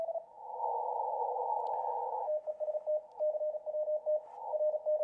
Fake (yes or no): no